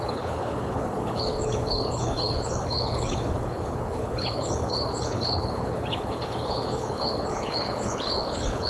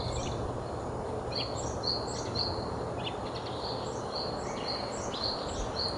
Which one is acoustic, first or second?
second